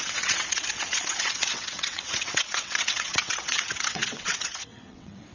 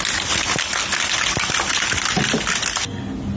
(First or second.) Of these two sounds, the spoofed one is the first